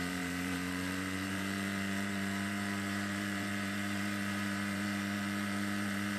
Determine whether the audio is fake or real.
fake